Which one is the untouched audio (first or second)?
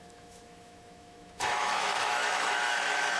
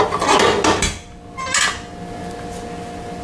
second